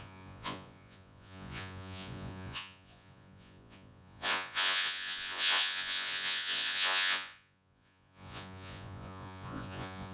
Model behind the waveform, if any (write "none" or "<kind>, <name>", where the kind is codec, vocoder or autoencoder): vocoder, Vocos